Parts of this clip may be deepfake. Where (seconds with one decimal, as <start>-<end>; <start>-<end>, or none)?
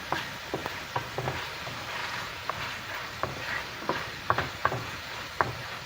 2.0-2.5; 4.6-5.1